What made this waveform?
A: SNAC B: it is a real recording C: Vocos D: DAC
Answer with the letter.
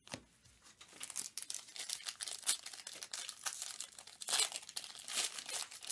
B